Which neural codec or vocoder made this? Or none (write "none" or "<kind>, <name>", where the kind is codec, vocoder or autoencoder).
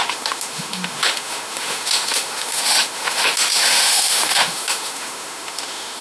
autoencoder, DAC-VAE